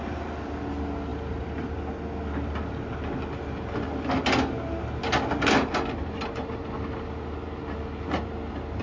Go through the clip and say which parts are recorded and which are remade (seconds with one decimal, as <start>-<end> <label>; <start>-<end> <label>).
0.0-8.8 recorded